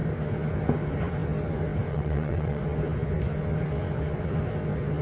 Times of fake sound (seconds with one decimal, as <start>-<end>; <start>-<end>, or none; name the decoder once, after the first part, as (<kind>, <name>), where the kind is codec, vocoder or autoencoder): 1.9-2.6 (vocoder, WaveNeXt)